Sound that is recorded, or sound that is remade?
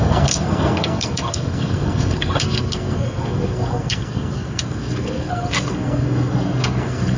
remade